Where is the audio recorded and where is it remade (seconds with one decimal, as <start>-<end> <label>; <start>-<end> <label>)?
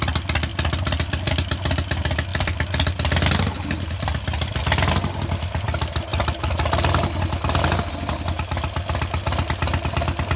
0.0-2.3 recorded; 2.3-4.6 remade; 4.6-6.1 recorded; 6.1-7.9 remade; 7.9-10.4 recorded